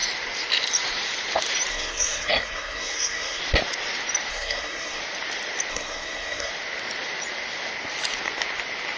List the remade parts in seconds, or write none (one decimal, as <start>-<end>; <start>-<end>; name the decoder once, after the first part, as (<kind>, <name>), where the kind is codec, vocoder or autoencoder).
1.7-3.4 (codec, SNAC); 4.3-5.0; 5.7-6.5